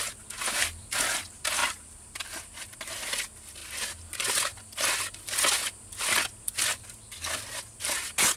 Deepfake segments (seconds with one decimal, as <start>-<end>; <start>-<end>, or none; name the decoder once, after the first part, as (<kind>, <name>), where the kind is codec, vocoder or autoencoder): 1.6-2.9 (vocoder, BigVGAN v2)

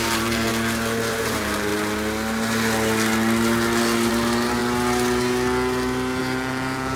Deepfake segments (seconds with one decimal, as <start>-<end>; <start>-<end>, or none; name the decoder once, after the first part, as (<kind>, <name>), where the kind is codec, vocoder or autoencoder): 0.0-0.5 (vocoder, BigVGAN v2); 1.1-1.7; 4.1-4.6; 6.2-7.0

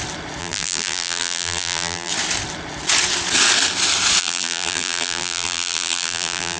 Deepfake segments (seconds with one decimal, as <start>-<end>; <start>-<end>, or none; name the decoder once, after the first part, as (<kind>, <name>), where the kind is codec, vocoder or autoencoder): 0.4-2.1 (vocoder, BigVGAN v2); 4.2-6.6

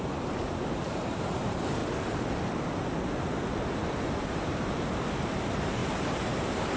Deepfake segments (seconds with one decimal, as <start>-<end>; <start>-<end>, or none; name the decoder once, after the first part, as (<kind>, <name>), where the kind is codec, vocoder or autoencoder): 0.0-1.8 (vocoder, BigVGAN v2); 3.7-6.8

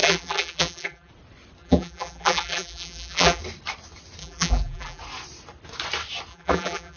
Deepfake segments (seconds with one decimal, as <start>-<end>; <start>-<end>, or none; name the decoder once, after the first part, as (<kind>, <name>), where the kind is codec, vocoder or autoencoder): 0.0-1.1 (vocoder, BigVGAN v2); 1.6-3.4; 4.2-5.0; 6.3-7.0

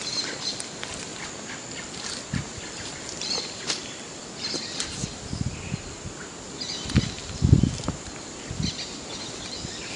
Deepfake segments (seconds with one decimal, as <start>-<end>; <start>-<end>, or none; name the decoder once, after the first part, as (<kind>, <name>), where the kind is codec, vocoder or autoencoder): 0.0-1.1 (vocoder, BigVGAN v2); 2.4-10.0